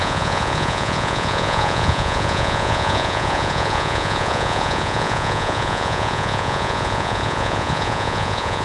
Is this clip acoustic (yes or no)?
no